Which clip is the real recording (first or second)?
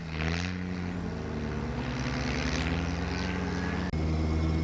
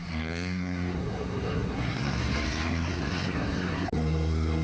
first